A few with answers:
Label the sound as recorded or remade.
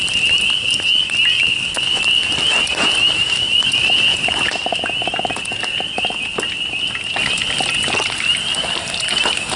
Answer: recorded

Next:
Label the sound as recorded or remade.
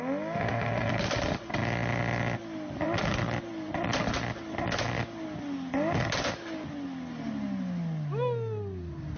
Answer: recorded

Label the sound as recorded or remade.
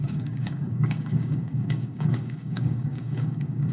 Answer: remade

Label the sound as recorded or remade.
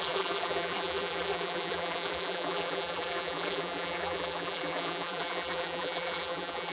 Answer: remade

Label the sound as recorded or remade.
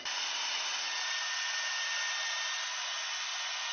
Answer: recorded